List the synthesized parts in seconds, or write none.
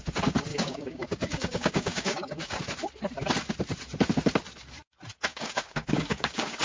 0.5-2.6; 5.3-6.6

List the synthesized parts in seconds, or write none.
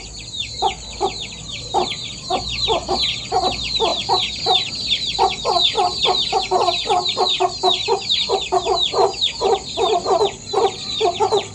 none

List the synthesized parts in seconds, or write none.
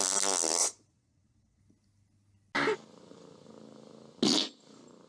0.6-1.6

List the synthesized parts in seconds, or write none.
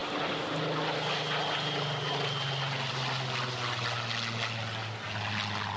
none